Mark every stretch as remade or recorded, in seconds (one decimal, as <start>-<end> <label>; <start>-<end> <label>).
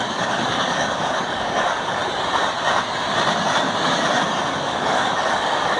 0.0-2.0 remade; 2.0-4.6 recorded; 4.6-5.8 remade